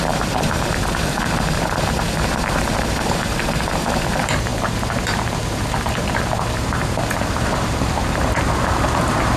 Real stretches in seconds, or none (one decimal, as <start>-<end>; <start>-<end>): none